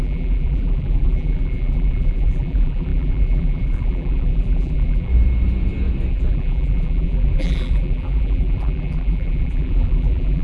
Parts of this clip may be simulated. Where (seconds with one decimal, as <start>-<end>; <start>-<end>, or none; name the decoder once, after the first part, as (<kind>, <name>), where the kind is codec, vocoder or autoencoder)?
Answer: 0.0-5.1 (vocoder, BigVGAN v2); 6.1-10.4